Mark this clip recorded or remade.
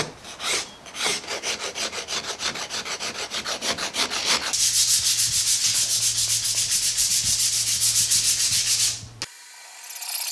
recorded